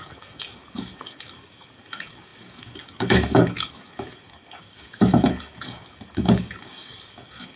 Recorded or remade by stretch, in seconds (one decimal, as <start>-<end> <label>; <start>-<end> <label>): 0.0-7.6 remade